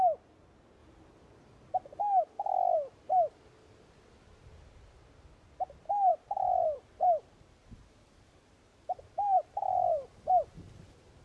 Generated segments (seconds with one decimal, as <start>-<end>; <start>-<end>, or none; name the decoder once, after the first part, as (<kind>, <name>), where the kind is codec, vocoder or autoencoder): 6.1-10.4 (vocoder, BigVGAN v2)